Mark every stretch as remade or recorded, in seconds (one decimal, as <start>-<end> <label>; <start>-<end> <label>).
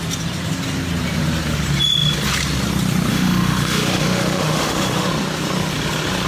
0.0-3.1 recorded; 3.1-5.1 remade; 5.1-6.3 recorded